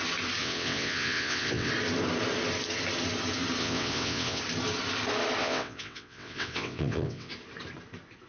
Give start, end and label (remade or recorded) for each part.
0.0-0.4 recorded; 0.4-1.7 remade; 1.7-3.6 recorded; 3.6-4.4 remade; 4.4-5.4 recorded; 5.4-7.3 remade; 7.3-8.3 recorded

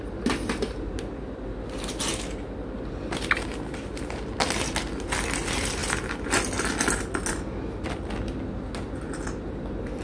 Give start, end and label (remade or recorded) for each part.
0.0-10.0 recorded

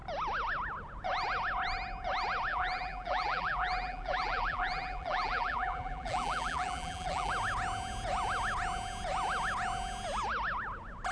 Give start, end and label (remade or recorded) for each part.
0.0-2.5 recorded; 2.5-7.3 remade; 7.3-11.1 recorded